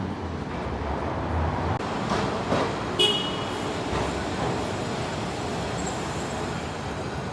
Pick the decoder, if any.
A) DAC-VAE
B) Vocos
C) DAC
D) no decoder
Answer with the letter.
D